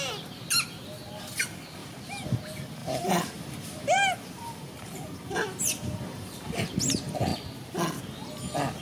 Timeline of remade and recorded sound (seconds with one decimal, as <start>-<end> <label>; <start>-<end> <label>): 0.0-1.8 recorded; 1.8-2.4 remade; 2.4-2.8 recorded; 2.8-6.6 remade; 6.6-8.8 recorded